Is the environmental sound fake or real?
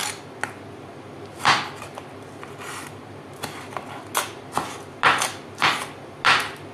real